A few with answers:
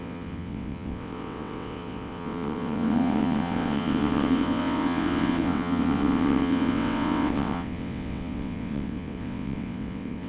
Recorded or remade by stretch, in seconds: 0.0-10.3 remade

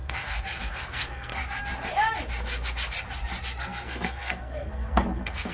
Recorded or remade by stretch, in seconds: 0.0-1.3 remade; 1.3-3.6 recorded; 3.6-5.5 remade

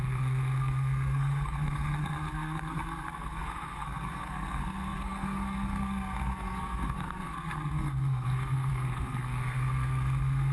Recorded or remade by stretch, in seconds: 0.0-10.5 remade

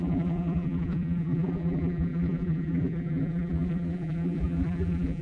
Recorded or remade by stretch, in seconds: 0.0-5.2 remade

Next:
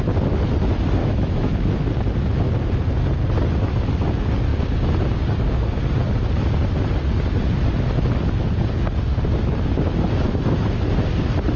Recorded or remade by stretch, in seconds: 0.0-1.0 recorded; 1.0-1.7 remade; 1.7-11.6 recorded

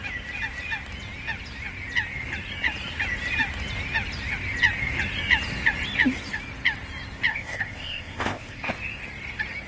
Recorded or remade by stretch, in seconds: 0.0-7.3 recorded; 7.3-8.7 remade; 8.7-9.7 recorded